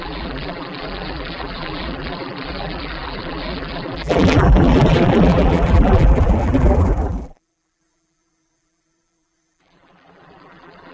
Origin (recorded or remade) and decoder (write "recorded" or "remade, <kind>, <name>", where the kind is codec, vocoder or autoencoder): remade, vocoder, BigVGAN v2